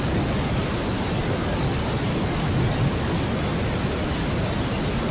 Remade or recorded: recorded